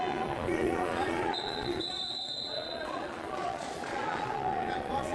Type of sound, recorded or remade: remade